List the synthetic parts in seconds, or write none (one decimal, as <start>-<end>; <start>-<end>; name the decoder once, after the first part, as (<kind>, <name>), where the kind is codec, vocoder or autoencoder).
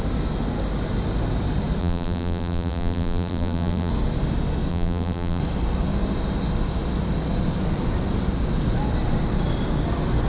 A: 1.8-3.9 (vocoder, BigVGAN v2); 4.7-5.4